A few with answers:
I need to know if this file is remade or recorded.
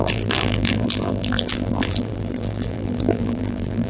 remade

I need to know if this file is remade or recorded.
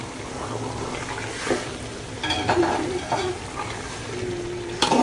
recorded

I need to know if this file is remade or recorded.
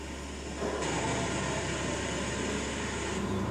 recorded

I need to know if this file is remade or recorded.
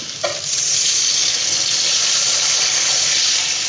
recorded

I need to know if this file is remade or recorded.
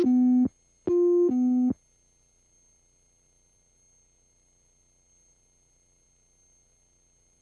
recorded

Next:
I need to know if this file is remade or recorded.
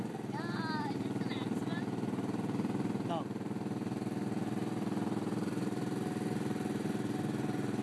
recorded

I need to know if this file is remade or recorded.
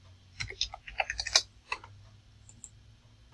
recorded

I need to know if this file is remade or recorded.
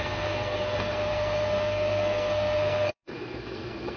remade